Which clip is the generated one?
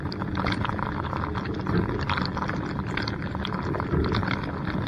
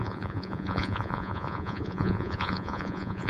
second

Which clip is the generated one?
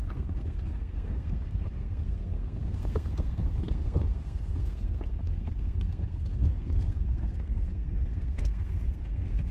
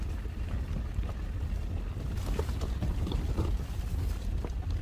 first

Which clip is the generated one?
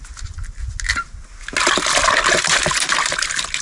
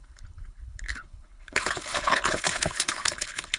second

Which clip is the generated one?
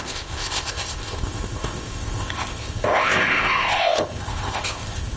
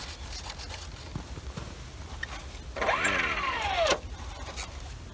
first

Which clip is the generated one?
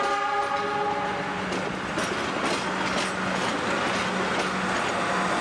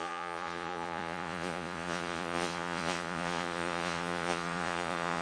second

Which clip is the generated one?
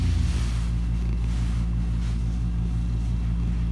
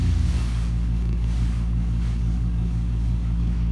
second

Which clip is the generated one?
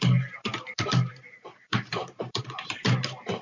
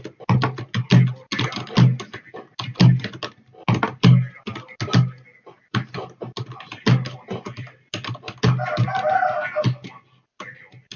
first